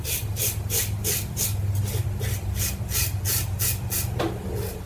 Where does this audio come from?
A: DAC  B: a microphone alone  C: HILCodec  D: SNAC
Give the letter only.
B